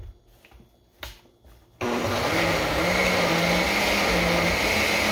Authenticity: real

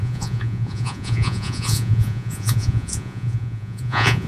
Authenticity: fake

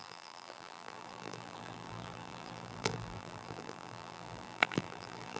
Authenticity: fake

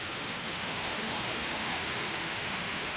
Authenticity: fake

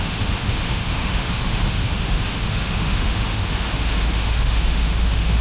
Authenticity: fake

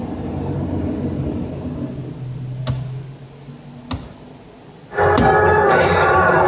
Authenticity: real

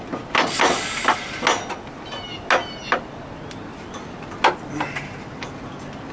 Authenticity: real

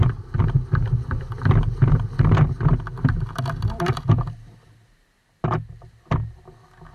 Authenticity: real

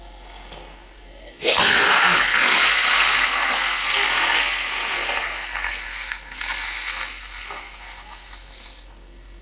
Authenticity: fake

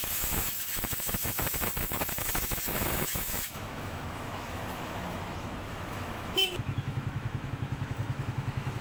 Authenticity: fake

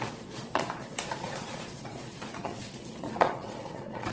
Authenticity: fake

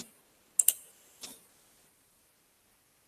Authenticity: real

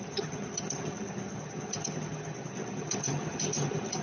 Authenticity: fake